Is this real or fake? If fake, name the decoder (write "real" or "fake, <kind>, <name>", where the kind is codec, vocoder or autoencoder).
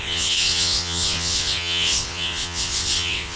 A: fake, vocoder, WaveNeXt